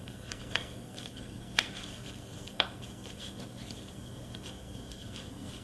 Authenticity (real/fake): fake